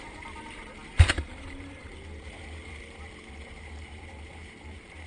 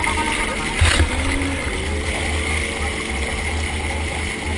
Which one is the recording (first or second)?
second